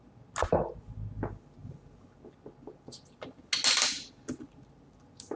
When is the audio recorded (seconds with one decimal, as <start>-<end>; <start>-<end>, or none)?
0.0-5.4